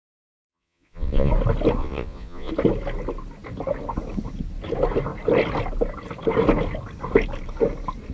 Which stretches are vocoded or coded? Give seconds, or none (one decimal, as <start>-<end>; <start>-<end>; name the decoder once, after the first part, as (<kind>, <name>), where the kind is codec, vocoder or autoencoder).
0.5-1.3 (vocoder, Vocos); 1.8-2.5